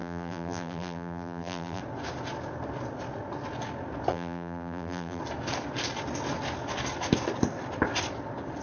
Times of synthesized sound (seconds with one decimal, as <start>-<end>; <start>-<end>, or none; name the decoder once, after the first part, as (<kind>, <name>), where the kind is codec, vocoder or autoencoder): 0.0-1.8 (vocoder, BigVGAN v2); 4.1-5.2